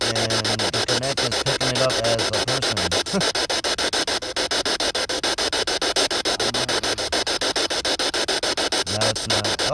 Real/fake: real